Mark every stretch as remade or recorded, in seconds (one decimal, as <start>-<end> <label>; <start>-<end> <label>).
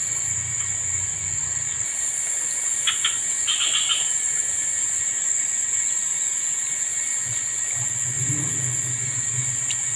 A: 0.0-10.0 recorded